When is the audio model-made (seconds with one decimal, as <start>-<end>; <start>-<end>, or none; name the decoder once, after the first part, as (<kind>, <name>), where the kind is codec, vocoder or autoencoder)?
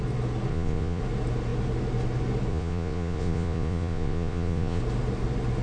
0.5-1.0 (vocoder, Vocos); 2.5-4.8